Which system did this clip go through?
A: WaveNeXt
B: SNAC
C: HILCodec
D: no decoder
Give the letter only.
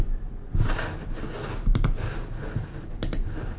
D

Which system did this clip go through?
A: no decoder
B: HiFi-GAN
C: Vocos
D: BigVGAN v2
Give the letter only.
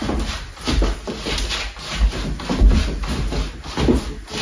A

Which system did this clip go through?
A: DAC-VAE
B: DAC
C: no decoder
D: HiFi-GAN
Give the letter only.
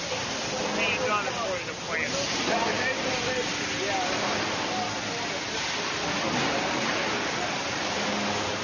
C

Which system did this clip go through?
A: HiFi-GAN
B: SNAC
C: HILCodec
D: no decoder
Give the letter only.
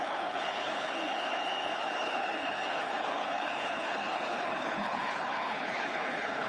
C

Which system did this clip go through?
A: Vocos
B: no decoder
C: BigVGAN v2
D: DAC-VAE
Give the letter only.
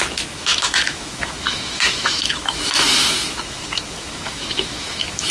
D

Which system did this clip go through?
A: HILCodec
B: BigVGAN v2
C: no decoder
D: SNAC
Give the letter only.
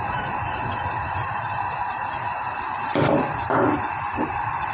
B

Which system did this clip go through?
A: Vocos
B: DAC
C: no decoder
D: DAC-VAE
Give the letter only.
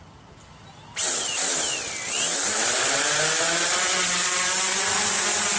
C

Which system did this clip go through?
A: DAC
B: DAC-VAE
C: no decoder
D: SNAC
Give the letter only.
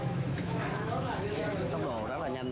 B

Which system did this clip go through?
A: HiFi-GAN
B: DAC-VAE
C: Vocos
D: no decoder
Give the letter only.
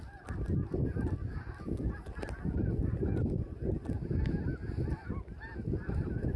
D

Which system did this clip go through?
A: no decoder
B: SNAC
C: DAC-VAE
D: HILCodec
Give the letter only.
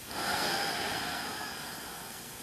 B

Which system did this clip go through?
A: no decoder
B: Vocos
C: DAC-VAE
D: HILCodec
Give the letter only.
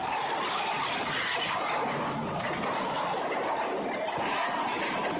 A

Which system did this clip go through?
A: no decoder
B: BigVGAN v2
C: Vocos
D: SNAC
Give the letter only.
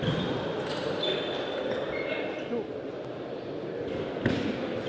A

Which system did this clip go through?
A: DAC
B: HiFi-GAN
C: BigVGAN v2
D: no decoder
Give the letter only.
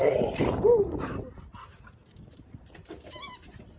C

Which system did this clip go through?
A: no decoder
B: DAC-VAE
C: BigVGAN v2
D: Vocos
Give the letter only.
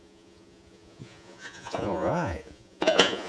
D